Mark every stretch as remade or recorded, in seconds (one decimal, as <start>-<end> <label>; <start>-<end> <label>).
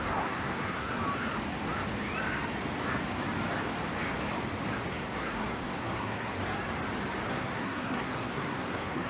0.0-1.0 remade; 1.0-4.9 recorded; 4.9-6.3 remade; 6.3-7.3 recorded; 7.3-9.1 remade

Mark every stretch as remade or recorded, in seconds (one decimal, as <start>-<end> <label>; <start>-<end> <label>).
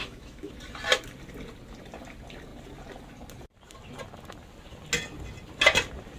0.0-0.5 remade; 0.5-6.2 recorded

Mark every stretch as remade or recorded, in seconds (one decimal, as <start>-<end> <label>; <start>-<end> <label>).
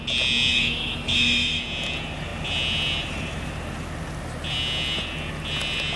0.0-0.5 recorded; 0.5-1.6 remade; 1.6-6.0 recorded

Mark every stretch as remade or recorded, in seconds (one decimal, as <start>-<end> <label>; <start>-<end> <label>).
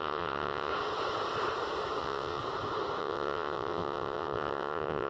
0.0-0.7 remade; 0.7-2.0 recorded; 2.0-2.4 remade; 2.4-3.0 recorded; 3.0-5.1 remade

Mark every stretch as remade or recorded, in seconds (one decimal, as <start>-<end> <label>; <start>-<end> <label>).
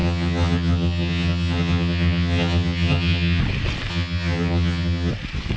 0.0-3.4 remade; 3.4-3.9 recorded; 3.9-5.1 remade; 5.1-5.6 recorded